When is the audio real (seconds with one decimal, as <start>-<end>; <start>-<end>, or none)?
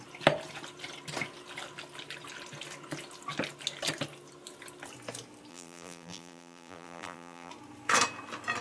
0.0-5.5; 7.5-8.6